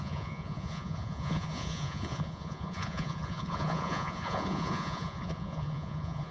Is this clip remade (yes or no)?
yes